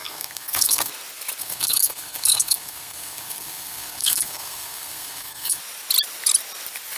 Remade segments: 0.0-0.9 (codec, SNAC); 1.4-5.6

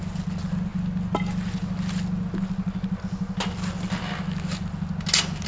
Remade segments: none

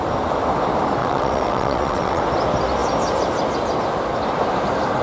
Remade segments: 1.0-2.2 (vocoder, WaveNeXt)

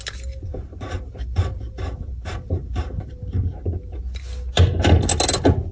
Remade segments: 0.5-3.3 (vocoder, BigVGAN v2)

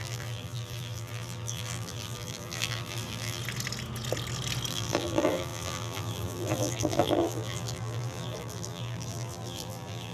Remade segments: 0.0-3.4 (vocoder, BigVGAN v2); 4.7-10.1

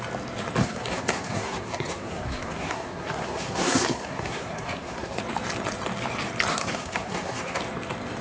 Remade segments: 0.6-5.2 (codec, SNAC); 6.5-7.6